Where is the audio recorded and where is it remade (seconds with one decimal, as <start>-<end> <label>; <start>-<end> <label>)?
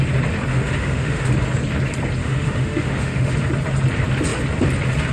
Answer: 0.0-0.5 recorded; 0.5-1.3 remade; 1.3-2.2 recorded; 2.2-3.3 remade; 3.3-5.1 recorded